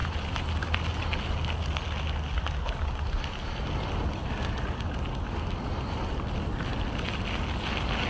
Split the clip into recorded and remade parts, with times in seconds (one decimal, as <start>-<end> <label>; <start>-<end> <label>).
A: 0.0-8.1 recorded

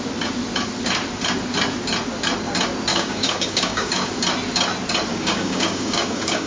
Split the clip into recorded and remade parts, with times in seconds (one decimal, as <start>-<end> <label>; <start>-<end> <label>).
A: 0.0-2.9 recorded; 2.9-4.1 remade; 4.1-5.1 recorded; 5.1-6.5 remade

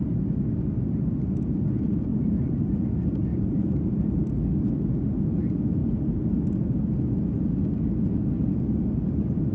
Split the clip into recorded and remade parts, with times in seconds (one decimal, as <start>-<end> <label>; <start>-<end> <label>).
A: 0.0-2.1 recorded; 2.1-2.6 remade; 2.6-3.3 recorded; 3.3-4.3 remade; 4.3-9.5 recorded